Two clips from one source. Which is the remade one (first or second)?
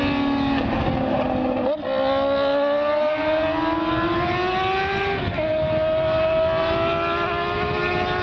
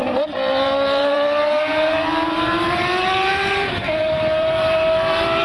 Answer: second